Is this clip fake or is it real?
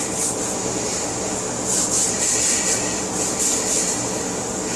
real